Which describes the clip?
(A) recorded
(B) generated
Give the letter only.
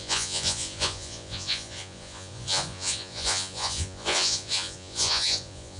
B